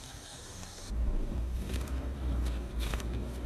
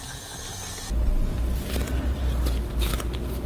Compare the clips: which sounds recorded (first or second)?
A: second